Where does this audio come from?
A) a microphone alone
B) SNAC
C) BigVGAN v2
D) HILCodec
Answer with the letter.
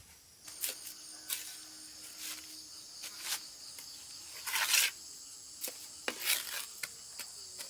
A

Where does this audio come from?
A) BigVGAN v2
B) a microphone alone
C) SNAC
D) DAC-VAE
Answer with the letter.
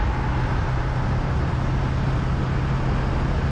B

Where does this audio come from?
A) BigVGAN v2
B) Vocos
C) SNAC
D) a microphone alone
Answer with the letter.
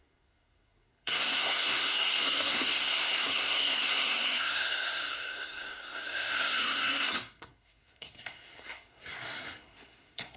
C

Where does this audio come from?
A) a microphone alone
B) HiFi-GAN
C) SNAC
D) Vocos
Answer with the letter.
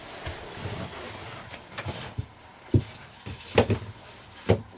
A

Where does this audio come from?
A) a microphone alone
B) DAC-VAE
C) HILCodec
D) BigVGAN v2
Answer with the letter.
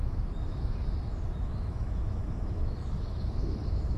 B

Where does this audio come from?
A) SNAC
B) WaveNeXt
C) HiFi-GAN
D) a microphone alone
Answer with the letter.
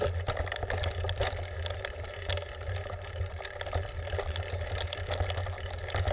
D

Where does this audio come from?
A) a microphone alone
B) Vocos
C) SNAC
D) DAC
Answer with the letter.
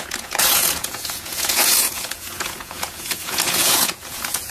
B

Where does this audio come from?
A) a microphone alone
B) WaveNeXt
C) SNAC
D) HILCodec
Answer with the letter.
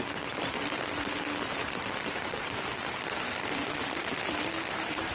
A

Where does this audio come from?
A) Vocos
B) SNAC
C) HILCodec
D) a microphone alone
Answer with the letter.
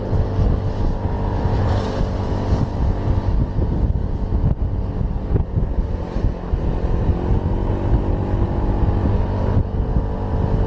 D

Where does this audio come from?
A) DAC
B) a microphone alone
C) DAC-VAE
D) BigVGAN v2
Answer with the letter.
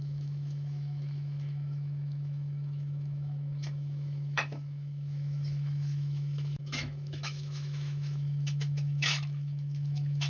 C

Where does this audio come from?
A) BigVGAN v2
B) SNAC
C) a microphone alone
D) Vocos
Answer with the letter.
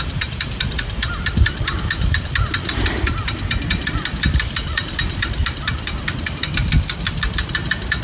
A